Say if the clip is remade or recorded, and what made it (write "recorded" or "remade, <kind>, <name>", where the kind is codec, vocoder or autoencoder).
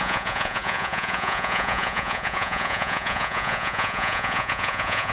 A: remade, vocoder, Vocos